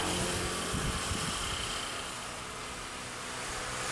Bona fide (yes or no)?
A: yes